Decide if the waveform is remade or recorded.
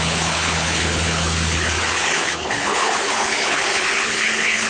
remade